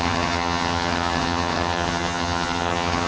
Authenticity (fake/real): fake